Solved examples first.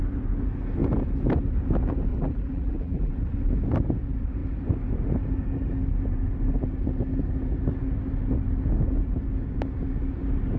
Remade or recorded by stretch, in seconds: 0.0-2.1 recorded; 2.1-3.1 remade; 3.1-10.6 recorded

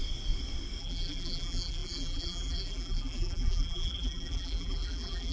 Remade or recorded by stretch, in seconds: 0.0-0.8 recorded; 0.8-5.3 remade

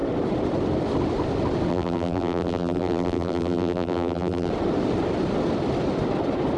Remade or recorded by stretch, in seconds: 0.0-1.7 recorded; 1.7-4.5 remade; 4.5-6.6 recorded